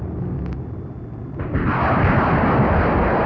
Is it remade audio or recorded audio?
recorded